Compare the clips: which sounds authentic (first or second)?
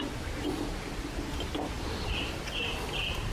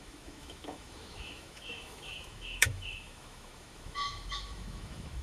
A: first